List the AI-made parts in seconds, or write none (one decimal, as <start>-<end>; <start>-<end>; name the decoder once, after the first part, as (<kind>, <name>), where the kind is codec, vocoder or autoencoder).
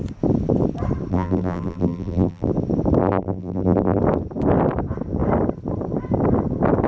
1.1-2.5 (vocoder, BigVGAN v2); 3.0-4.0